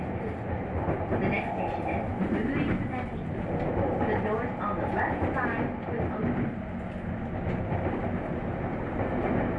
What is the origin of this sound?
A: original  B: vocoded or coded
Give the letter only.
A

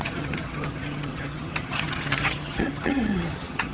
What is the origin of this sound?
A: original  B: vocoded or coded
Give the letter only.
B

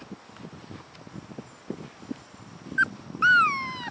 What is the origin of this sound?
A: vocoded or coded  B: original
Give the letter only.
B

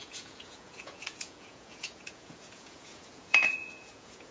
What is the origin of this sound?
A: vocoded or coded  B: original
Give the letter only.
A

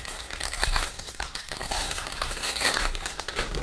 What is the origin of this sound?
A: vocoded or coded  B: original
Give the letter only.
A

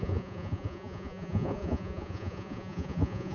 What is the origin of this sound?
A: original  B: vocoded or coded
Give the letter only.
B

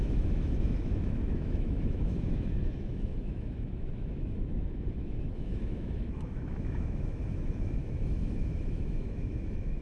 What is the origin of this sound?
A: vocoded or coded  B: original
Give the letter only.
A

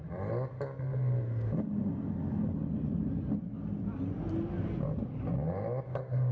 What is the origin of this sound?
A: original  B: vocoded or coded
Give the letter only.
A